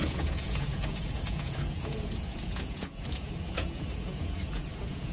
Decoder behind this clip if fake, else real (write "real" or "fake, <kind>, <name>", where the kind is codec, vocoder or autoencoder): fake, vocoder, Vocos